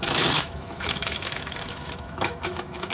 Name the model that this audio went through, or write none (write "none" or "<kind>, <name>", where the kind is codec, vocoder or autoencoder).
autoencoder, DAC-VAE